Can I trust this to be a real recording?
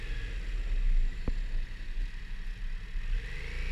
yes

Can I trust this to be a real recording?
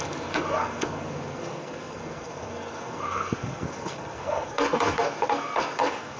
no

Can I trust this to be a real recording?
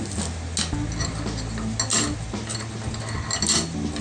yes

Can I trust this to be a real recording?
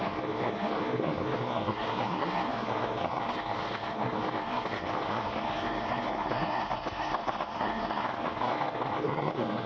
no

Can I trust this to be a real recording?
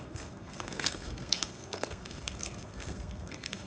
no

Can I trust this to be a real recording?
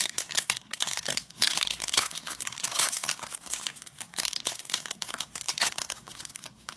no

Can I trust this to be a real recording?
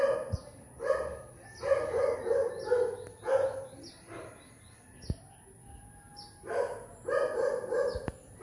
yes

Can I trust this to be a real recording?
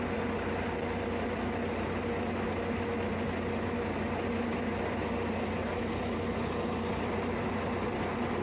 yes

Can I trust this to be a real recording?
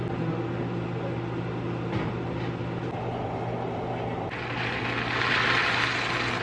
yes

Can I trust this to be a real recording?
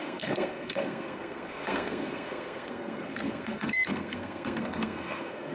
no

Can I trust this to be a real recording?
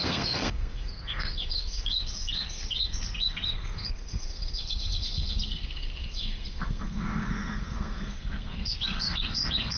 no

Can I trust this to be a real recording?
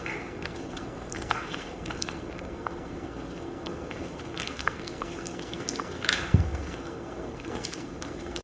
no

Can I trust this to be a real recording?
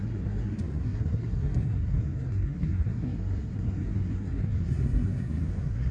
no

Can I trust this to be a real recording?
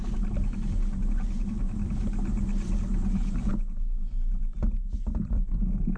yes